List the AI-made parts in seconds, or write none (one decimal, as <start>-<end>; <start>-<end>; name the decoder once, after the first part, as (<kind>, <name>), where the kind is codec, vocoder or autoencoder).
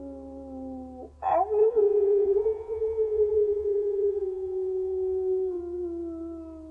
1.6-5.6 (vocoder, Vocos)